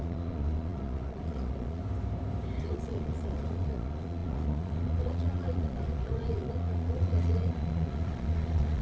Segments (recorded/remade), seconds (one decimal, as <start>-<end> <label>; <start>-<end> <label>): 0.0-1.8 remade; 1.8-2.6 recorded; 2.6-8.8 remade